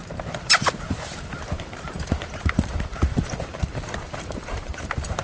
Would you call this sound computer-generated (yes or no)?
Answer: yes